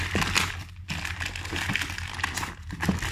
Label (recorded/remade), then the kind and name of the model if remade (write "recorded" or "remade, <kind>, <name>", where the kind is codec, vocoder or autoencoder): recorded